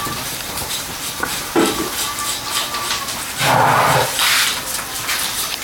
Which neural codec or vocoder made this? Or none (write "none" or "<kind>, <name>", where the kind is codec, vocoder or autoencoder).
vocoder, BigVGAN v2